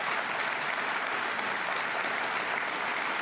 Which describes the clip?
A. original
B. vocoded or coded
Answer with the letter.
A